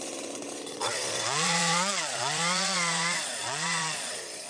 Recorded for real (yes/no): no